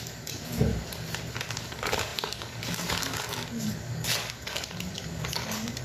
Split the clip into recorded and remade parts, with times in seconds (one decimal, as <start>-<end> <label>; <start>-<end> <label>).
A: 0.0-0.7 remade; 0.7-1.5 recorded; 1.5-5.8 remade